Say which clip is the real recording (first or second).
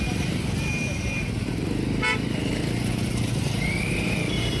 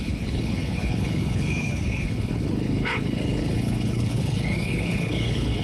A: first